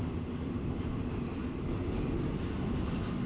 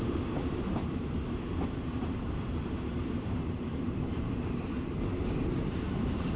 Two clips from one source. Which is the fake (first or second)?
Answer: second